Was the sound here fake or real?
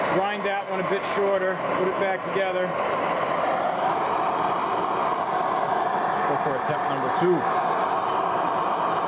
real